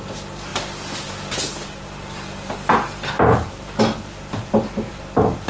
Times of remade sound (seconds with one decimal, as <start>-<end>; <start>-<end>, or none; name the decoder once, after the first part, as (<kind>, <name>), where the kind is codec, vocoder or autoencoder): none